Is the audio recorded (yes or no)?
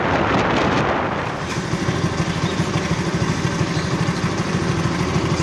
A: yes